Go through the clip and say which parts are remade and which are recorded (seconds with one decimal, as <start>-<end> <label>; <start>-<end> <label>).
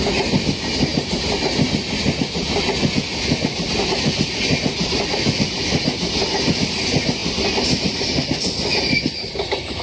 0.0-9.8 recorded